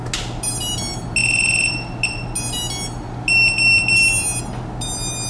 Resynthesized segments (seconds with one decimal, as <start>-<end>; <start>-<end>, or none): none